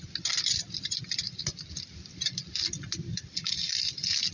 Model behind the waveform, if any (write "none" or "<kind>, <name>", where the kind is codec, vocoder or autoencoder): none